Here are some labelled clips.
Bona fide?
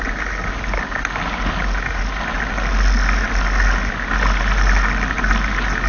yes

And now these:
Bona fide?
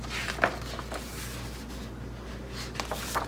yes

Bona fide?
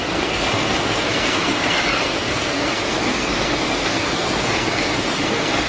no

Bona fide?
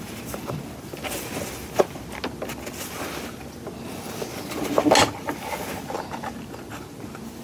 yes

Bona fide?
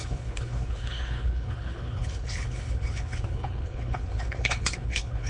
no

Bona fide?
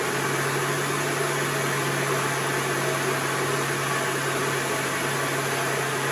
yes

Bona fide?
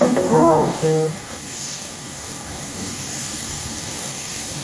no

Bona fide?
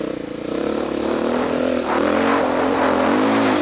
yes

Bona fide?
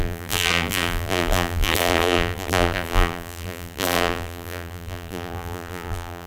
no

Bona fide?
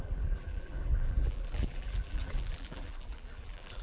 no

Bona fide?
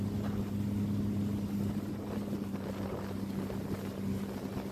yes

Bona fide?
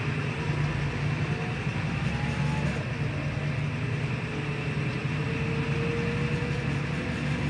yes